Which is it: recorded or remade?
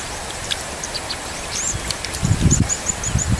recorded